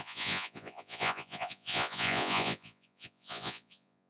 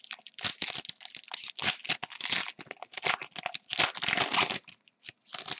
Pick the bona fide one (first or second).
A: second